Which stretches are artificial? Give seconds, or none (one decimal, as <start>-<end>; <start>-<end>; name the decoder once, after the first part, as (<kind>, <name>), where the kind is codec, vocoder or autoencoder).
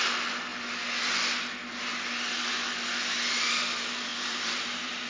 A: 4.1-5.1 (vocoder, BigVGAN v2)